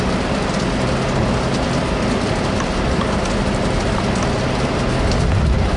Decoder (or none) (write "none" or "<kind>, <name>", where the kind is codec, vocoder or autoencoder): none